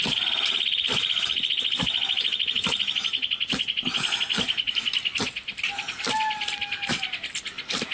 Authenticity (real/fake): real